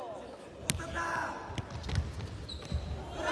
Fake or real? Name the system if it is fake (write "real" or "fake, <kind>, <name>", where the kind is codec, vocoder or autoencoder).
real